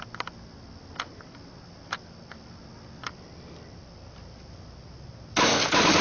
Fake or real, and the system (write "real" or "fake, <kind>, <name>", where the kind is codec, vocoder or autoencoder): real